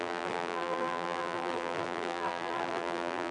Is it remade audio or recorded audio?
remade